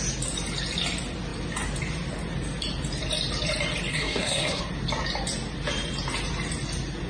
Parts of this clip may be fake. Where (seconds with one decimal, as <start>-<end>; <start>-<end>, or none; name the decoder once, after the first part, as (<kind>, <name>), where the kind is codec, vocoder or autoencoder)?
3.9-4.6 (codec, SNAC)